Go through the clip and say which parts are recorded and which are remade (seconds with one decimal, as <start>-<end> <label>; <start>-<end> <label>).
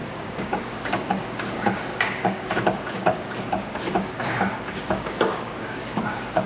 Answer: 0.0-6.5 remade